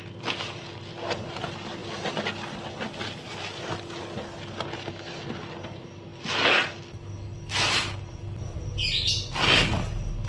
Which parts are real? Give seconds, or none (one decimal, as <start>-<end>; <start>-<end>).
0.0-10.3